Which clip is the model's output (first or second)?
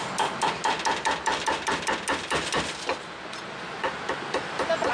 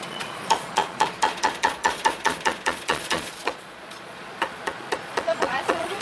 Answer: second